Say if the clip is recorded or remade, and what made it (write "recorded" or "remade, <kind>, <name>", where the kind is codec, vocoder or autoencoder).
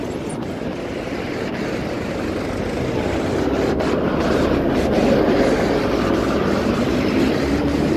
recorded